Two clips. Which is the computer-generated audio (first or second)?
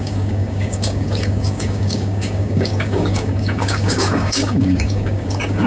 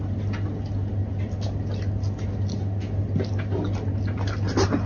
first